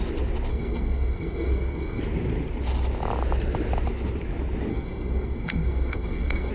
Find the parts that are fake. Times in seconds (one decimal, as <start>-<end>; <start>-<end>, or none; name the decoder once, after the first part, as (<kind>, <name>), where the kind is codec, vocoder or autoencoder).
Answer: 0.5-2.0 (codec, SNAC); 4.7-6.5